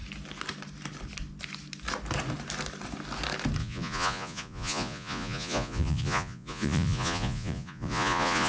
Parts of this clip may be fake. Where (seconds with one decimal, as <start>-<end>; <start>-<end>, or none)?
3.6-8.5